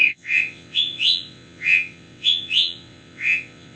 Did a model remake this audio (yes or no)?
yes